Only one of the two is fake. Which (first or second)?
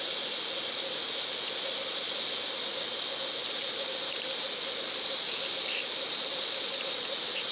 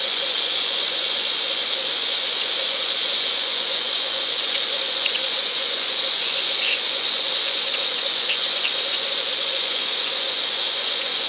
second